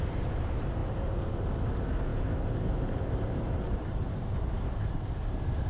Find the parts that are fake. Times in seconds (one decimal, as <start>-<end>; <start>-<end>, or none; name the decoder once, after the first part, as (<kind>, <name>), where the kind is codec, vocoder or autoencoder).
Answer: 0.0-5.7 (vocoder, BigVGAN v2)